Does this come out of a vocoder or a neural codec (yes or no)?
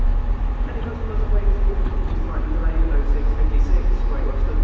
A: no